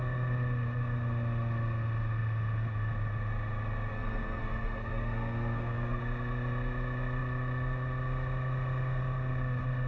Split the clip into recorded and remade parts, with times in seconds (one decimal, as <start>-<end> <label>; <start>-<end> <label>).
0.0-3.9 recorded; 3.9-6.0 remade; 6.0-9.9 recorded